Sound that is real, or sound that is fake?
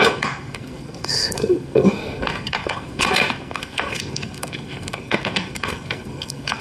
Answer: fake